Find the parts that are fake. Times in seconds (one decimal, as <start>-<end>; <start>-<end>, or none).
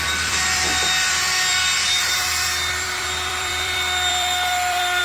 0.0-5.0